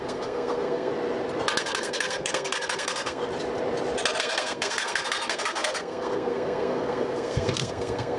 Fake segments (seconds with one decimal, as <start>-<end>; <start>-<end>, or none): 0.0-0.9; 1.6-3.2; 4.2-8.2